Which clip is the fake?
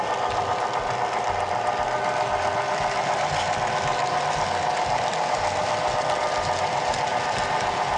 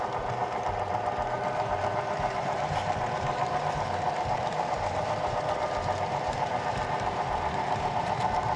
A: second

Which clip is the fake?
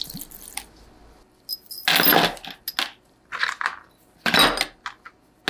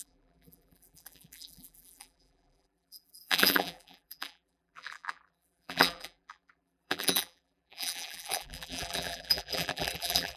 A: second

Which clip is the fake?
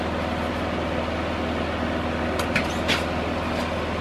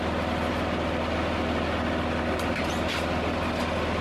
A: second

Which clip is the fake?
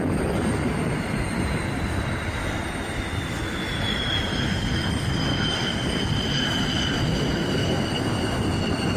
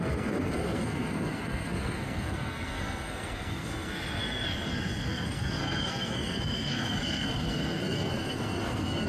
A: second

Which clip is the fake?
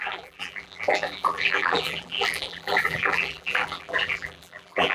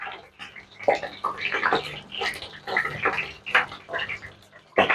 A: first